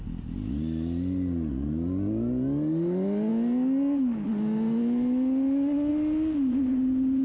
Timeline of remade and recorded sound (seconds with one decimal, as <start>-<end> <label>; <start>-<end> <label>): 0.0-7.2 recorded